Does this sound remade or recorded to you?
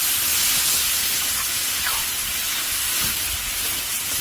recorded